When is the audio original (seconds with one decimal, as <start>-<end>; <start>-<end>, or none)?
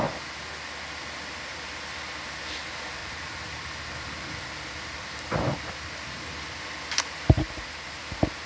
0.0-3.0; 6.6-8.5